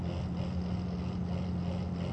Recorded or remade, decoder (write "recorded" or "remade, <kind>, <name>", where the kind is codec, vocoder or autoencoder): recorded